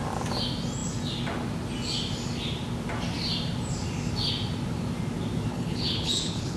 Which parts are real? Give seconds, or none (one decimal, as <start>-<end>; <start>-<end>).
0.0-5.5